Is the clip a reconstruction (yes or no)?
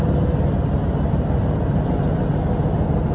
no